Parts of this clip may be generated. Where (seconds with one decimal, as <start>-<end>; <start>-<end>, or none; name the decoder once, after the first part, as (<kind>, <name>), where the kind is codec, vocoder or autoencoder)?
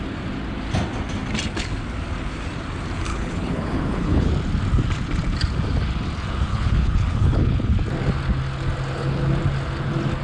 3.1-4.3 (codec, HILCodec); 6.5-7.7